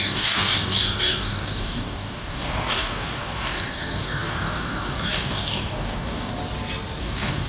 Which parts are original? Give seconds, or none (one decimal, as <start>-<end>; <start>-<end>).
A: 6.3-7.0